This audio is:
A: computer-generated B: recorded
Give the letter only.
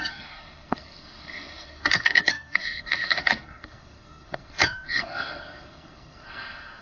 A